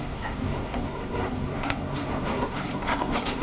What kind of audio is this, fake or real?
fake